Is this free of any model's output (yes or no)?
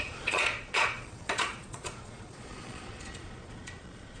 no